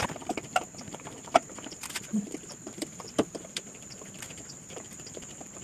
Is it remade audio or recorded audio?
remade